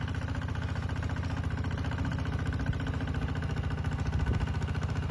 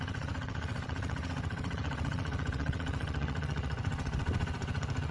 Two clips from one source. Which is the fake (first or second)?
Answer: second